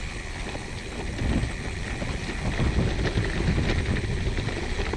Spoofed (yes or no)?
no